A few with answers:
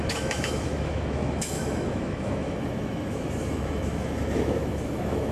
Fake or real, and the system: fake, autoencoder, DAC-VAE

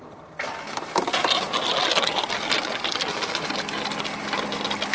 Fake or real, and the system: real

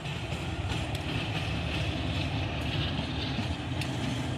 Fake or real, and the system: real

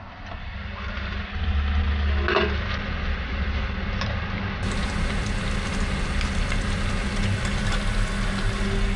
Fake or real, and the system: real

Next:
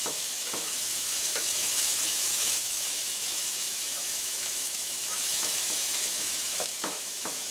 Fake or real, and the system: fake, autoencoder, DAC-VAE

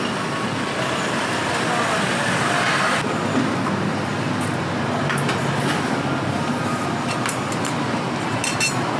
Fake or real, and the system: real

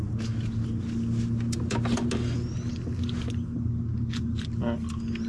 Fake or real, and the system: real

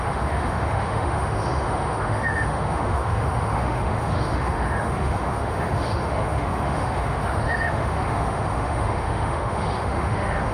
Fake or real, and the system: fake, autoencoder, DAC-VAE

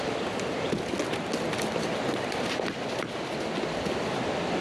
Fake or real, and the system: real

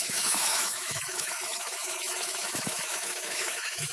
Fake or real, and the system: fake, autoencoder, DAC-VAE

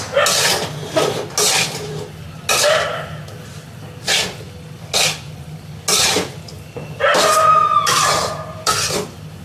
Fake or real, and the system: real